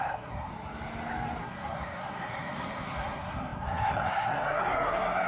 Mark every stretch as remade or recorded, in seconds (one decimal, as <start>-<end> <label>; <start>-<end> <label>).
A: 0.0-0.5 remade; 0.5-1.4 recorded; 1.4-5.3 remade